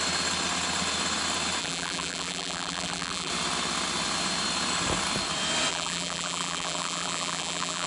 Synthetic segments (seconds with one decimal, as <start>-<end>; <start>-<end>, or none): 1.6-3.3; 5.7-7.9

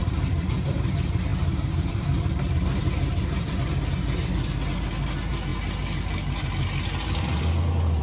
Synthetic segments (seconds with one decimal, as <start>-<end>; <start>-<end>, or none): 0.0-0.9; 1.3-3.6

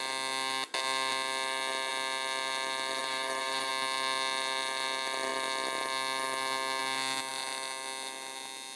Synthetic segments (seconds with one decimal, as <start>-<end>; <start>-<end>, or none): 3.0-3.7

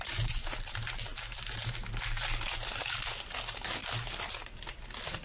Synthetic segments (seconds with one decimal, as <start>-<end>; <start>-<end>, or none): none

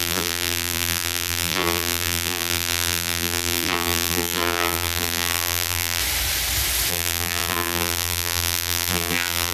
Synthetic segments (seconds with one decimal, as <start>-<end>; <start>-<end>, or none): 0.0-6.0; 6.9-9.5

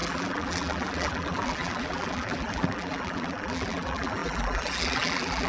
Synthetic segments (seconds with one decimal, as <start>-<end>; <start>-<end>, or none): 0.0-5.5

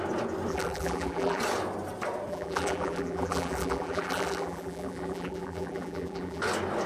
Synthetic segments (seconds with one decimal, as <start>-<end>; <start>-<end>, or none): 0.5-1.4; 2.3-6.4

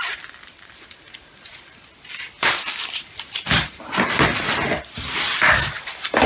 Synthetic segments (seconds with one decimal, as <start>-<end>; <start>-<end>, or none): 0.0-6.3